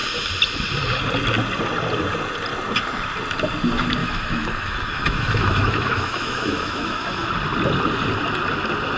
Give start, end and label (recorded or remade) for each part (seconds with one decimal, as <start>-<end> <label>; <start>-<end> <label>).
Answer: 0.0-4.0 recorded; 4.0-7.3 remade; 7.3-9.0 recorded